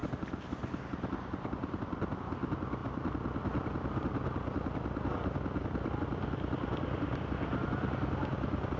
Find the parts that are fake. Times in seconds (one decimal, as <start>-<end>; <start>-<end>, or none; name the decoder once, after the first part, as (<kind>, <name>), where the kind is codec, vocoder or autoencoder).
none